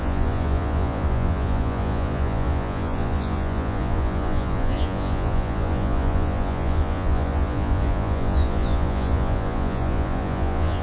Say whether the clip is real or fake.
fake